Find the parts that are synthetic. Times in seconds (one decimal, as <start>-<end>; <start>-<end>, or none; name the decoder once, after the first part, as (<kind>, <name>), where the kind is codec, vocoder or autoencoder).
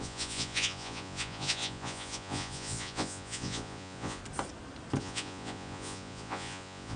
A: 0.0-4.2 (vocoder, Vocos); 5.0-7.0